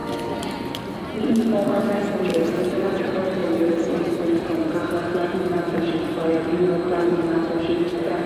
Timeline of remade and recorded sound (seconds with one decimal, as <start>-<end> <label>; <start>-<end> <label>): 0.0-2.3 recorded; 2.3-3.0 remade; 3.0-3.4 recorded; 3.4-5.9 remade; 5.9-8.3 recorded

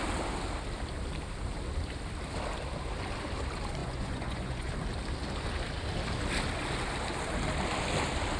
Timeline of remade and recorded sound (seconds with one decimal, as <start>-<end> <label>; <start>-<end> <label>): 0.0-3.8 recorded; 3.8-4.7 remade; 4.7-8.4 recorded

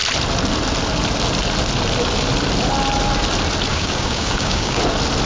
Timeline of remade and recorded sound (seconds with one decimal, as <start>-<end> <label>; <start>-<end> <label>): 0.0-3.7 recorded; 3.7-4.8 remade; 4.8-5.3 recorded